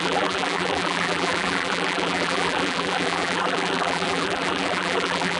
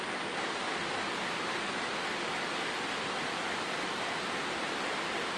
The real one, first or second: second